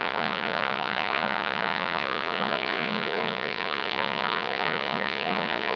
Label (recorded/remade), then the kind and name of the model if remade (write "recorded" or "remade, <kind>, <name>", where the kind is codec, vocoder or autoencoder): remade, vocoder, Vocos